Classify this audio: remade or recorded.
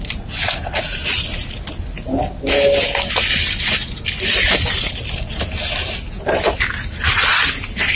recorded